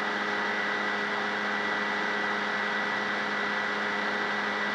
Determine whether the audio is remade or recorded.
recorded